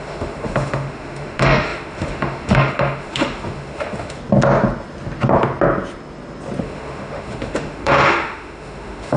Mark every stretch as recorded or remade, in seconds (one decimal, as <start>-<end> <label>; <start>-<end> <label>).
0.0-4.2 remade; 4.2-6.6 recorded; 6.6-9.2 remade